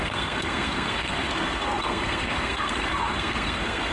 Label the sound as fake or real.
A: fake